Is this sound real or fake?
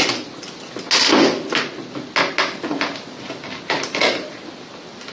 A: real